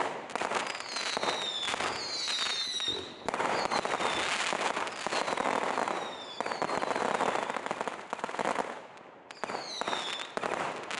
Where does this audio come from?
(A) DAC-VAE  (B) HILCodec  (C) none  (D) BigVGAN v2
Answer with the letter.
C